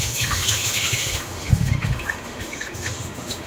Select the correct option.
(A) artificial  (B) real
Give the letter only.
A